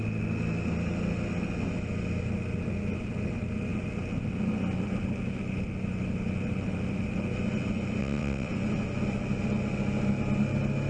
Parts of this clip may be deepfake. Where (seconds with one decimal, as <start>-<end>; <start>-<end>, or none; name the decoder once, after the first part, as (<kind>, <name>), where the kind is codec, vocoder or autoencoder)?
8.0-8.5 (vocoder, WaveNeXt)